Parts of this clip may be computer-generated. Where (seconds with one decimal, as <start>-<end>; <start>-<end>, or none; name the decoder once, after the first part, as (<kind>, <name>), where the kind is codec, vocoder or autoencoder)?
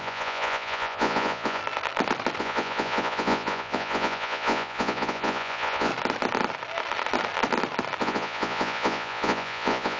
0.0-1.6 (vocoder, Vocos); 2.4-5.9; 8.0-10.0